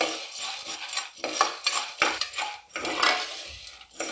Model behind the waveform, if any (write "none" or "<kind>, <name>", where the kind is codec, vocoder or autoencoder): none